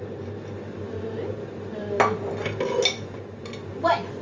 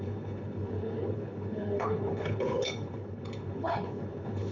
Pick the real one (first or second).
first